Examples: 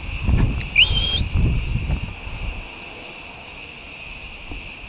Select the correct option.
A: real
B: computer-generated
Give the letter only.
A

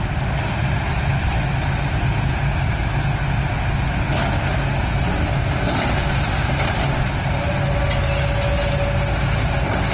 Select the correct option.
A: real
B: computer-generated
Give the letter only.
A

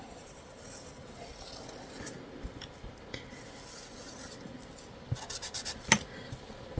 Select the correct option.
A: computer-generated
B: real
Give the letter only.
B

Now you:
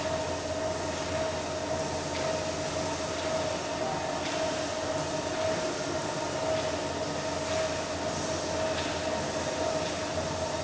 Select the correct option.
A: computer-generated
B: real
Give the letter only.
B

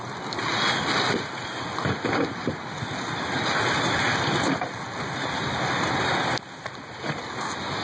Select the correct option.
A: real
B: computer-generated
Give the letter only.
A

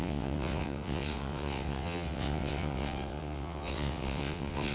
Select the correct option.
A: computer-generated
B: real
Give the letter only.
A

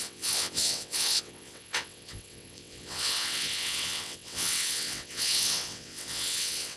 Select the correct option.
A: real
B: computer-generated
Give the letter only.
B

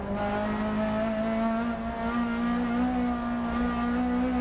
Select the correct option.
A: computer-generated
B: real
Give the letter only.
B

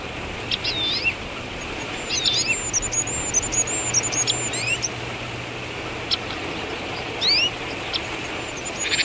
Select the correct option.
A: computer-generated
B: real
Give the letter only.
B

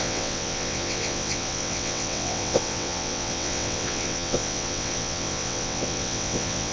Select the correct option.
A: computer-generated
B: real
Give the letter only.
A